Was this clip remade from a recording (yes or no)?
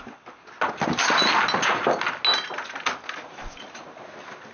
no